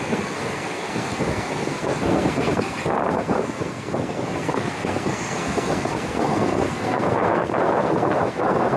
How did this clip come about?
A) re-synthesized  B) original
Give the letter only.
A